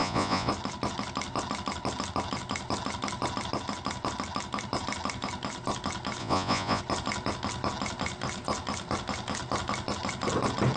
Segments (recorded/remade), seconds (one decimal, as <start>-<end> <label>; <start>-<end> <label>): 0.0-0.5 remade; 0.5-6.2 recorded; 6.2-6.8 remade; 6.8-10.8 recorded